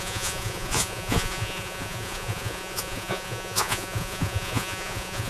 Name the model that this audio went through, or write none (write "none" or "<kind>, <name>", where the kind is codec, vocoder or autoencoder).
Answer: vocoder, Vocos